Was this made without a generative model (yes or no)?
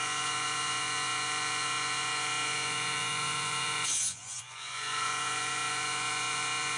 no